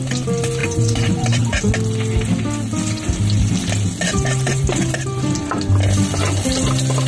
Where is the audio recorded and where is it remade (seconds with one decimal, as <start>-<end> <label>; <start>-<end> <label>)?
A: 0.0-0.6 recorded; 0.6-1.4 remade; 1.4-4.1 recorded; 4.1-5.6 remade; 5.6-7.1 recorded